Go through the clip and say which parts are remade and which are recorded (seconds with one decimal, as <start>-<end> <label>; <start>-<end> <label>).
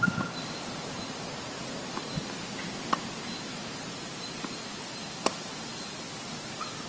0.0-1.6 remade; 1.6-3.4 recorded; 3.4-6.9 remade